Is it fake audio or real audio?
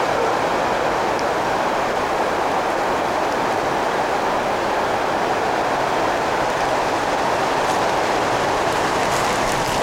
real